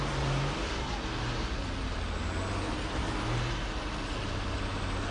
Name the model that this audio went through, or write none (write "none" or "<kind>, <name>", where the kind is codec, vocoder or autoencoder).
none